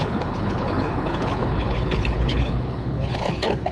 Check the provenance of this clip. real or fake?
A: fake